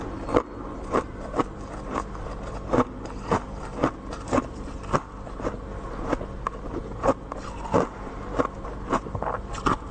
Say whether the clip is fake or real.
real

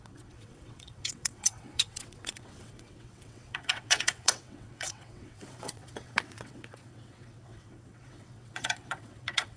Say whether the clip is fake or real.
fake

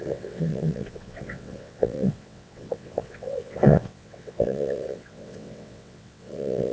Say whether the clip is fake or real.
fake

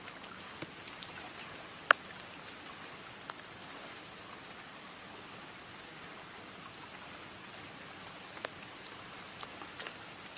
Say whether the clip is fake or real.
real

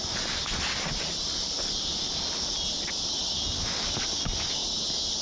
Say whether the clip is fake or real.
real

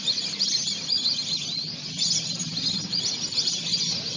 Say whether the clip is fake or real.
real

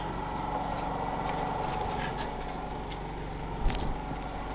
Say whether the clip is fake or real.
real